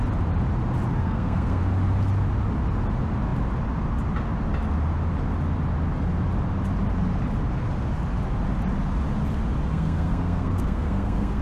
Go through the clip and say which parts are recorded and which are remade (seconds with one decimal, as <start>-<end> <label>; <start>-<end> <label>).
0.0-1.0 recorded; 1.0-1.6 remade; 1.6-9.7 recorded; 9.7-11.4 remade